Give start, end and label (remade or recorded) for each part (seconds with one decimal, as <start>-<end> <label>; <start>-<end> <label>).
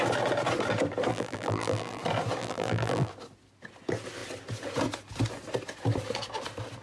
0.0-1.1 recorded; 1.1-2.0 remade; 2.0-2.4 recorded; 2.4-3.1 remade; 3.1-6.8 recorded